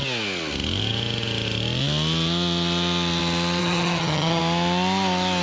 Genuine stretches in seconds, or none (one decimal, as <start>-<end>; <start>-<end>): 0.0-3.6; 4.4-5.4